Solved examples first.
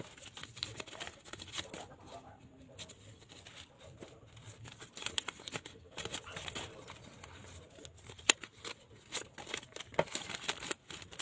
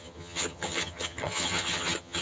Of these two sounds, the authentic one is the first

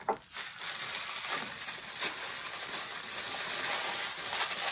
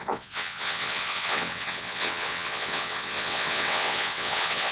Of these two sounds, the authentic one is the first